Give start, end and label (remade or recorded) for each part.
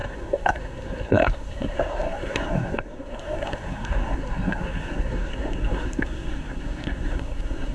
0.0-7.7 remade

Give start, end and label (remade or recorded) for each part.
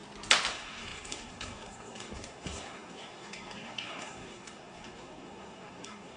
0.0-0.5 recorded; 0.5-6.2 remade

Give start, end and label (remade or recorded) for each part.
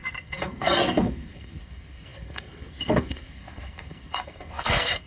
0.0-5.1 remade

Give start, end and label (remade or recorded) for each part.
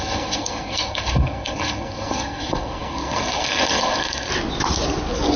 0.0-4.3 remade; 4.3-5.4 recorded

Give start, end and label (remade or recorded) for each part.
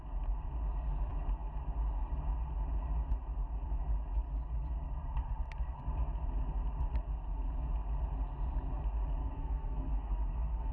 0.0-9.2 recorded; 9.2-10.7 remade